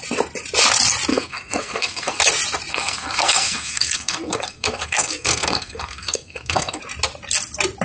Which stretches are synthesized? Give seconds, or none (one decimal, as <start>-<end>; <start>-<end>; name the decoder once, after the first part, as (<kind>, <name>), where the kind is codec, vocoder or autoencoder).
1.1-2.2 (codec, SNAC); 2.7-6.8